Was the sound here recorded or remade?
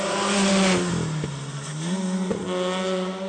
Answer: recorded